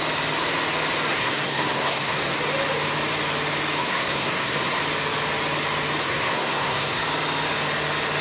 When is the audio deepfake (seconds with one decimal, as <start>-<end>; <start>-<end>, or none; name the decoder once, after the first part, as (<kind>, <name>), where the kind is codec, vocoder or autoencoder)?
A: 1.1-2.4 (codec, SNAC); 3.8-4.8; 6.0-7.0